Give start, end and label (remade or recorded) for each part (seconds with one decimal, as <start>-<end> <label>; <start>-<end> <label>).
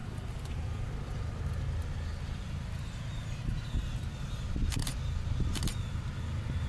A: 0.0-6.7 recorded